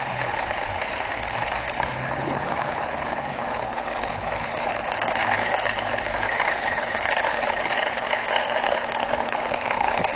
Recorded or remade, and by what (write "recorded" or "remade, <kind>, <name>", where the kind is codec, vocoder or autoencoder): remade, codec, HILCodec